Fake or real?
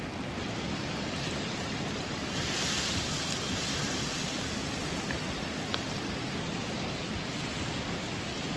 real